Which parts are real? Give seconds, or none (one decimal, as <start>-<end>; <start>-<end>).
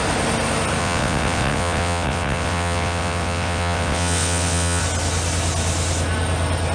0.0-0.8; 4.8-6.7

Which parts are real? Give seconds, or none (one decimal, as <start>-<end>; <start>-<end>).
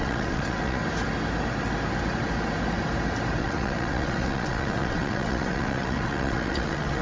0.8-3.4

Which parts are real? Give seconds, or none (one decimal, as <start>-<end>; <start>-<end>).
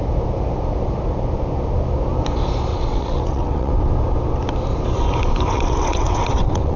0.0-2.7; 3.7-5.5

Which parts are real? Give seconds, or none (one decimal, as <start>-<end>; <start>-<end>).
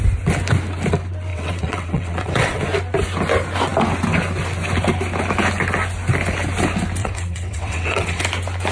0.0-1.3; 2.6-7.0; 8.2-8.7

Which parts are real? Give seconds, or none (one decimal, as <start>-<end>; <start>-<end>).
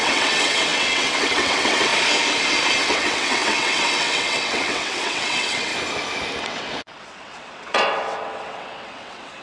1.9-2.8; 5.7-6.4